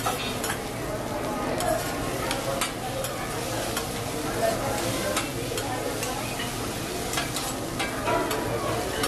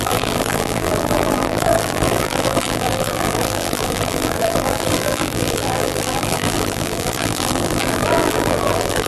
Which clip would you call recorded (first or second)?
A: first